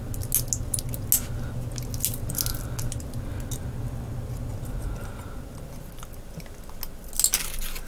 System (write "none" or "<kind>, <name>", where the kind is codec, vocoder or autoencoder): none